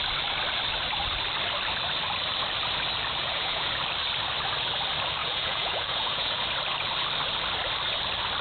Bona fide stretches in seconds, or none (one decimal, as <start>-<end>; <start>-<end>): 0.0-3.2; 3.7-5.2; 6.4-8.4